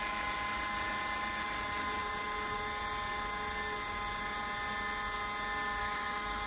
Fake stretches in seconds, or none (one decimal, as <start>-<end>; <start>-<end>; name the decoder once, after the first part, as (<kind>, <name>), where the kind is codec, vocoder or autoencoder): 5.8-6.5 (autoencoder, DAC-VAE)